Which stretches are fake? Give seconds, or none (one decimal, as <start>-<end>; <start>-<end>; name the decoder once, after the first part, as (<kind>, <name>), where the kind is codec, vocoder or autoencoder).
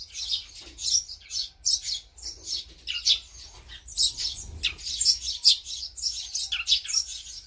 none